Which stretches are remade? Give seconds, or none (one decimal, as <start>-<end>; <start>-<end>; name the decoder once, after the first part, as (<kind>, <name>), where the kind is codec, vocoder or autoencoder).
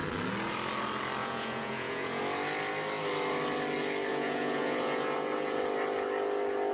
1.2-2.2 (vocoder, Vocos); 4.1-5.6